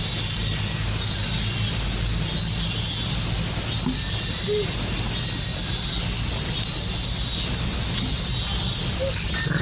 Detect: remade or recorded recorded